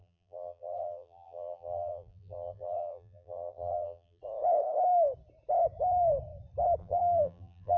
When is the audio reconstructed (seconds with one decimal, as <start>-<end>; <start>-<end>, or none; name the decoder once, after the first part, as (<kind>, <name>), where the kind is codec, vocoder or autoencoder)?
0.0-4.2 (vocoder, BigVGAN v2); 6.8-7.8